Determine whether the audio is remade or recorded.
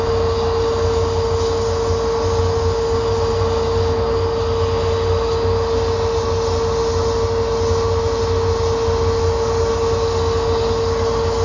recorded